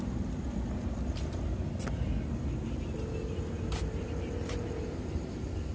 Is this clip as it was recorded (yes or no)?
yes